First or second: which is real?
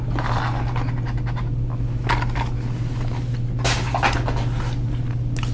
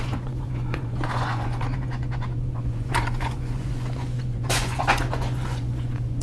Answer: first